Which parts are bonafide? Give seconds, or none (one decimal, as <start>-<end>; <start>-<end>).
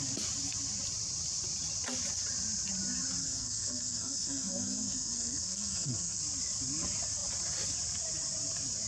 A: 0.0-3.2; 6.2-8.9